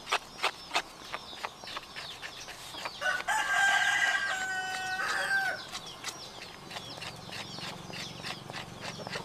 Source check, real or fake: real